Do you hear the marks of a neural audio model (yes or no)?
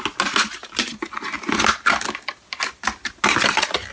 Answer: no